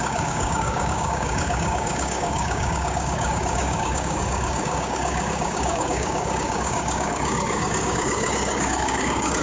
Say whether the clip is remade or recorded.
remade